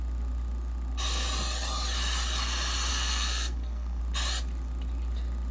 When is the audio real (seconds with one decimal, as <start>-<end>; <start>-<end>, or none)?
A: 0.0-2.9; 4.0-5.5